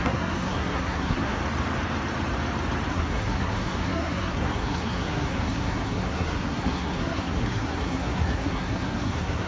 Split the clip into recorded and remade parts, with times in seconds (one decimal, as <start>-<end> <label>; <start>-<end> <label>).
0.0-1.4 remade; 1.4-2.9 recorded; 2.9-9.5 remade